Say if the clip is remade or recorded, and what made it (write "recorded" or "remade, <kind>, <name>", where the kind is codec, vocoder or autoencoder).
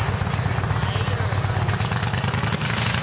recorded